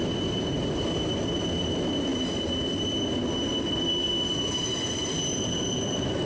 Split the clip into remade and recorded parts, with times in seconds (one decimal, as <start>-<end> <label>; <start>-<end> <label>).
0.0-6.2 recorded